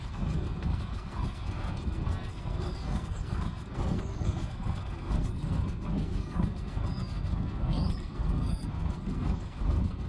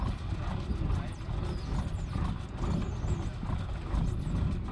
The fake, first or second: first